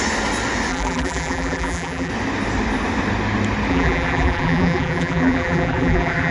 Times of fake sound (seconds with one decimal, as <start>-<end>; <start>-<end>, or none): 0.7-2.1; 3.7-6.3